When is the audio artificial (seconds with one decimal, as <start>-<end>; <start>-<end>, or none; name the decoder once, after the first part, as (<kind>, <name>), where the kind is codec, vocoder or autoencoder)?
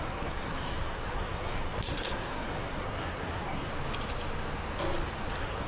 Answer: 0.0-3.7 (codec, SNAC); 5.3-5.7